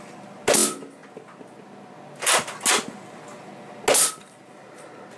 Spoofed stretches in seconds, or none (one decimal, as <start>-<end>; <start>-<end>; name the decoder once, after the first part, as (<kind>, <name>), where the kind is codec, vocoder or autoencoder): none